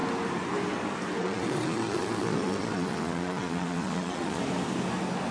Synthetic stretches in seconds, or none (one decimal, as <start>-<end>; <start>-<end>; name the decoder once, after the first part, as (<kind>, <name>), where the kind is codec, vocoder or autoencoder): 1.2-4.4 (vocoder, Vocos)